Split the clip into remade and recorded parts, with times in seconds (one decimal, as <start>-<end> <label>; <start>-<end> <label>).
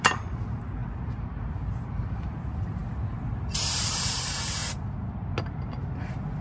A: 0.0-4.6 remade; 4.6-6.4 recorded